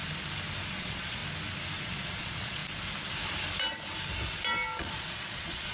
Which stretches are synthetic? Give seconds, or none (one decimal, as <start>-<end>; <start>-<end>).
0.7-1.2; 1.8-2.6; 4.8-5.7